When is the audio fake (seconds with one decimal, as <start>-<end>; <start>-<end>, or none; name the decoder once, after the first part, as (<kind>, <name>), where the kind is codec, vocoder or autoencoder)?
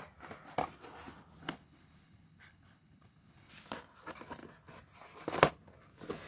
1.4-3.5 (codec, HILCodec)